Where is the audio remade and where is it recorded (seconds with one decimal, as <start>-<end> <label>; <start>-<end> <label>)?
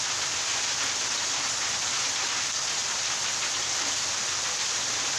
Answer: 0.0-5.2 recorded